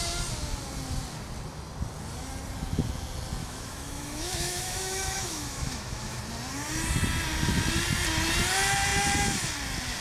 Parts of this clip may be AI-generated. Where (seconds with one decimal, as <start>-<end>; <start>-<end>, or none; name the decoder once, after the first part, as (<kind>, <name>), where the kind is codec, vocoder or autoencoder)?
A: 3.4-6.2 (autoencoder, DAC-VAE)